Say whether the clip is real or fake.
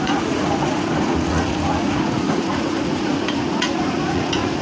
fake